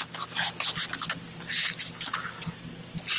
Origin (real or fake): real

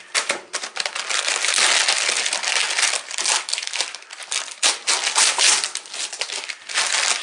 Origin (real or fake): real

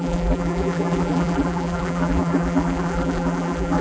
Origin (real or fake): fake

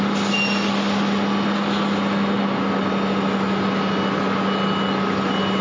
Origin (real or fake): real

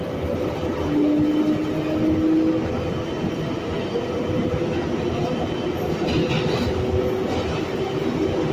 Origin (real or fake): real